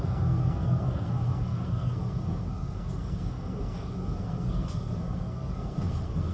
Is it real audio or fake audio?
fake